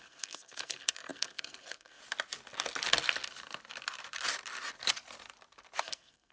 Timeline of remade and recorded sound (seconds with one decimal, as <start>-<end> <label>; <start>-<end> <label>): 0.0-2.0 remade; 2.0-5.8 recorded; 5.8-6.3 remade